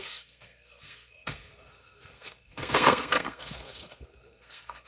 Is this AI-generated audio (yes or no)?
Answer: yes